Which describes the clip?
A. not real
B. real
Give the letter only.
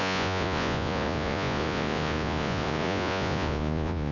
A